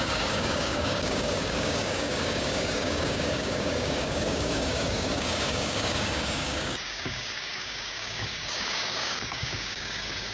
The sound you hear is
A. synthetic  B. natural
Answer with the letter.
A